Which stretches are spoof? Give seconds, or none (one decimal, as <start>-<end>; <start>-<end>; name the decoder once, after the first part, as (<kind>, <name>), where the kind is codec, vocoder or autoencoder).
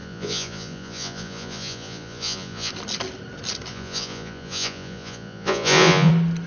0.0-2.7 (vocoder, Vocos); 3.7-6.1